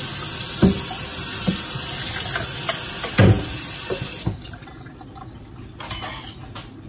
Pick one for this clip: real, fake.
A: real